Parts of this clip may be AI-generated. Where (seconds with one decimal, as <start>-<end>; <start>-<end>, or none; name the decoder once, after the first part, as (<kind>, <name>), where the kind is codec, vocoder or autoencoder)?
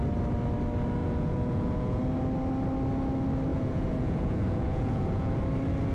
1.0-2.0 (vocoder, Vocos); 3.5-5.3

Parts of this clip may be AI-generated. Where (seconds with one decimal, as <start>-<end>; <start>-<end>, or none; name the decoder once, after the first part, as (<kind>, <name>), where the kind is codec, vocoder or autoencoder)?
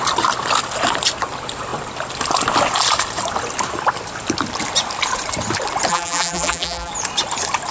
5.9-6.9 (vocoder, BigVGAN v2)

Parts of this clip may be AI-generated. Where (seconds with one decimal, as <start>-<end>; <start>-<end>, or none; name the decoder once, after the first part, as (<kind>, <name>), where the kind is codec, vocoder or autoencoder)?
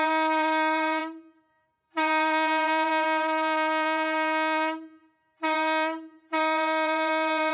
0.0-1.0 (vocoder, BigVGAN v2); 1.5-7.5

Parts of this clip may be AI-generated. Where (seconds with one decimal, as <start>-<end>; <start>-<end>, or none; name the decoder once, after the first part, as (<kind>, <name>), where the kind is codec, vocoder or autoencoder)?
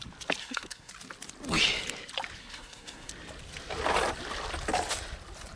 0.4-0.9 (codec, SNAC); 2.4-3.1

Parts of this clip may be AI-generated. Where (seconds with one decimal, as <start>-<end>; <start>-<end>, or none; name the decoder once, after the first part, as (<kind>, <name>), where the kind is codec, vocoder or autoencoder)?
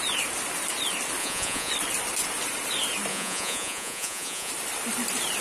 1.2-1.7 (vocoder, Vocos); 3.1-4.5